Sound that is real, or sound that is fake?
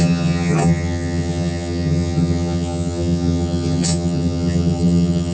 fake